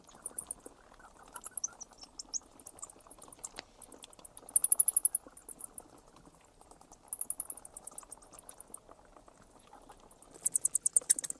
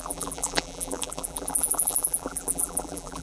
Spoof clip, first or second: second